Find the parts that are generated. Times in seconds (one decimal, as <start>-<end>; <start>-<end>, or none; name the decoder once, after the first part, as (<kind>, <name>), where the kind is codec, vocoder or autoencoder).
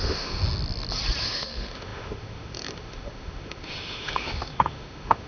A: 0.0-0.4 (autoencoder, DAC-VAE); 1.2-5.3